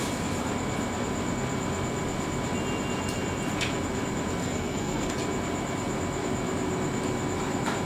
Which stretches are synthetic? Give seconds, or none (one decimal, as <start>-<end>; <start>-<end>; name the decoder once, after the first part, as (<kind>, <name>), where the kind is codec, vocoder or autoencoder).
4.4-5.1 (codec, SNAC)